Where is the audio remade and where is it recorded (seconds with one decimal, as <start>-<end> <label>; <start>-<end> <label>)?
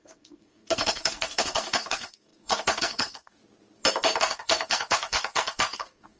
0.0-3.4 remade; 3.4-4.2 recorded; 4.2-6.2 remade